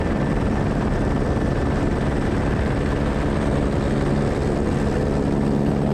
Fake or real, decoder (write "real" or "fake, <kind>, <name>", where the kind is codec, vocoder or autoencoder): real